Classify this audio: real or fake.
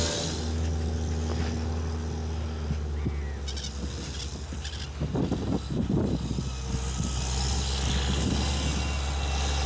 real